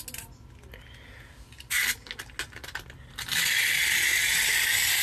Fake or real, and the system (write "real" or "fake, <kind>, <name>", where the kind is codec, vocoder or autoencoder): real